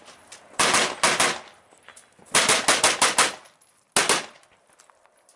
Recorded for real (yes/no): yes